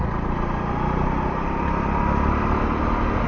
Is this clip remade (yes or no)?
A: no